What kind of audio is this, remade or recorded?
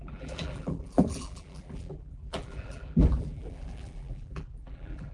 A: remade